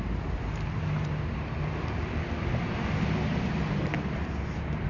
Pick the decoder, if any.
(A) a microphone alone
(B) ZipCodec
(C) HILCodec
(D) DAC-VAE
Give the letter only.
A